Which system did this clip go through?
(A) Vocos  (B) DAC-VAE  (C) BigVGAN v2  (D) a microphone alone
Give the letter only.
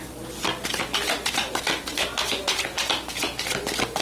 D